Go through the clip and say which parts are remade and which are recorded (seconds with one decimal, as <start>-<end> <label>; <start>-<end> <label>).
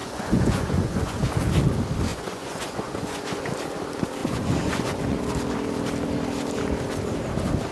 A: 0.0-1.3 remade; 1.3-2.1 recorded; 2.1-3.5 remade; 3.5-4.2 recorded; 4.2-5.2 remade; 5.2-7.7 recorded